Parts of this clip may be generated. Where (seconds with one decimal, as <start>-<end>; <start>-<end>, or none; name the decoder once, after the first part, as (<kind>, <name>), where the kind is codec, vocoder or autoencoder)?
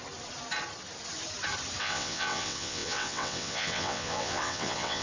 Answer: 1.8-5.0 (vocoder, WaveNeXt)